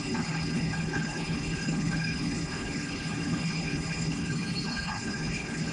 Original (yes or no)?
no